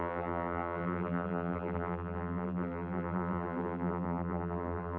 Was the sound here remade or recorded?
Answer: remade